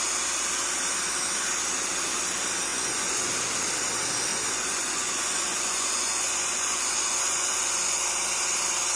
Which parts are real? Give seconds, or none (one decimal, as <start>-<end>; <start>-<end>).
0.0-2.7; 3.3-4.3; 8.0-9.0